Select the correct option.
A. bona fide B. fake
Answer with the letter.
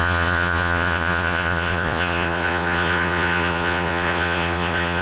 B